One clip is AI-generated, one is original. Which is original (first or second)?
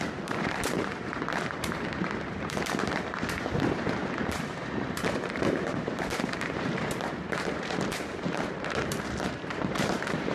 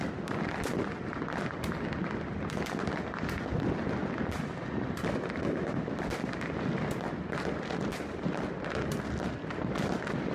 second